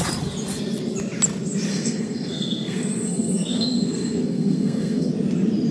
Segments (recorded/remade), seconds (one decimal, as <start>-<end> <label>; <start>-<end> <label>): 0.0-1.7 recorded; 1.7-5.1 remade; 5.1-5.7 recorded